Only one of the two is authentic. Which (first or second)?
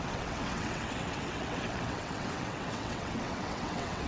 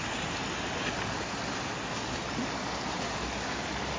second